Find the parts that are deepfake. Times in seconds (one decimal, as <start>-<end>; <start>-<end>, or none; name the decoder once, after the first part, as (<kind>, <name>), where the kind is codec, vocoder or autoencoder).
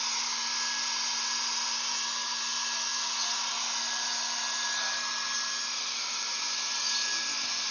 none